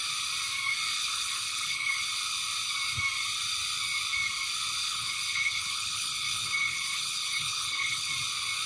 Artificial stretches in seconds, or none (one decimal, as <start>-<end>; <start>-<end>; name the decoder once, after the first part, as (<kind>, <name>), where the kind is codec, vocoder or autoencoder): 1.0-2.0 (codec, HILCodec); 4.8-8.1